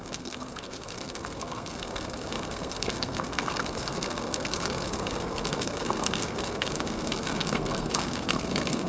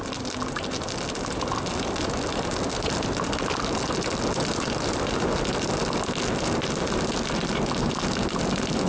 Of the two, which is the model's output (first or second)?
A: first